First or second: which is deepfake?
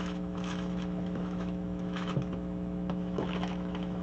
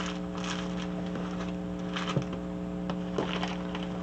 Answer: first